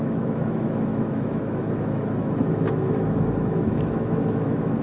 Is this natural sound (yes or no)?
no